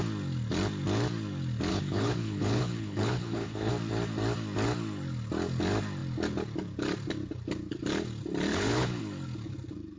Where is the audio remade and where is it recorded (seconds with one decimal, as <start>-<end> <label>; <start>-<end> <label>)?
0.0-1.7 recorded; 1.7-3.7 remade; 3.7-8.5 recorded; 8.5-9.0 remade; 9.0-10.0 recorded